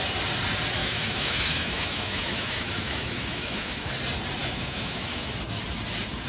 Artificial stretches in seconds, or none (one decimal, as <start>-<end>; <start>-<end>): 0.8-3.9; 4.4-5.3